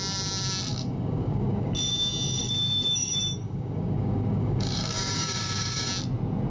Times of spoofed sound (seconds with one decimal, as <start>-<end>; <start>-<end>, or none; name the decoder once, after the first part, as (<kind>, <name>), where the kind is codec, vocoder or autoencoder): 0.7-1.7 (codec, DAC); 2.4-5.9

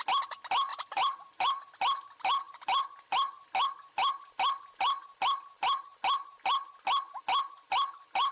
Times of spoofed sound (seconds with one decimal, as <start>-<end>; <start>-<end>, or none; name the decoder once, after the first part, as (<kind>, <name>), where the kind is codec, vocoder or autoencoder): 0.7-1.6 (vocoder, BigVGAN v2); 2.5-3.5

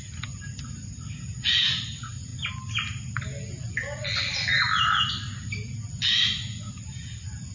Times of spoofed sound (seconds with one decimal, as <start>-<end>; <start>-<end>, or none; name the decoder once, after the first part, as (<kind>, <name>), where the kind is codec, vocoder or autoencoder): none

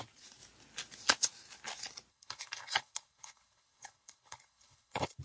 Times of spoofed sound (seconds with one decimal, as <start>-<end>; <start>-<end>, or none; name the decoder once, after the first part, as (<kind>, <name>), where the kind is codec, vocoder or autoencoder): 2.1-5.2 (codec, HILCodec)

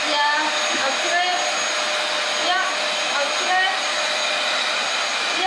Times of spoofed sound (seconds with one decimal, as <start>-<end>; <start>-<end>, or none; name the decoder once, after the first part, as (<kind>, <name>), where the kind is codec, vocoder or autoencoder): none

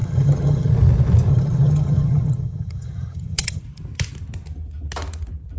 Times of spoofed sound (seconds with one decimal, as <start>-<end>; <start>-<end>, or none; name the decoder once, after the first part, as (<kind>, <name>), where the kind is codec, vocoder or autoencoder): 0.0-0.7 (vocoder, HiFi-GAN); 1.3-3.6